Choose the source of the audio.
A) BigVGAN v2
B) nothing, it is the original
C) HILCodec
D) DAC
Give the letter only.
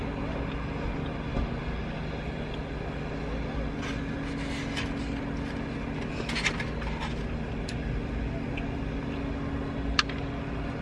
B